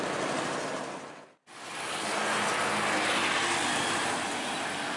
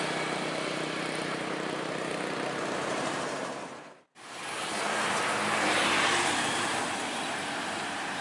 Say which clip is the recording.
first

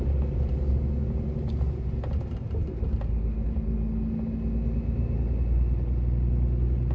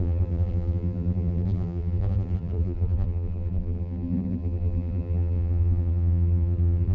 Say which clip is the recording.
first